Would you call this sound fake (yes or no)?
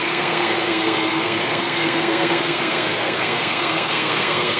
yes